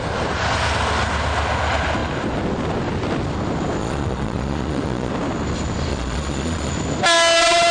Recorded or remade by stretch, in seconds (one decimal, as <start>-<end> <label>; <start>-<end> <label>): 0.0-3.8 recorded; 3.8-5.1 remade; 5.1-5.9 recorded; 5.9-6.7 remade; 6.7-7.7 recorded